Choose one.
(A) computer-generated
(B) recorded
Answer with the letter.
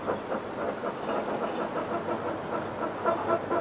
B